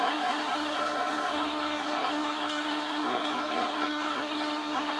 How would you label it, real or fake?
fake